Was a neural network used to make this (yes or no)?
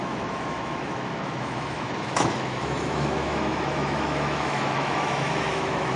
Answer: yes